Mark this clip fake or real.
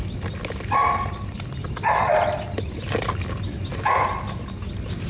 real